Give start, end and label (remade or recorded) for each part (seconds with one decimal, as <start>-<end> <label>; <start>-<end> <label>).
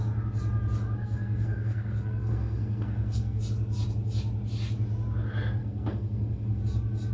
0.0-1.0 recorded; 1.0-3.4 remade; 3.4-5.6 recorded; 5.6-6.6 remade; 6.6-7.1 recorded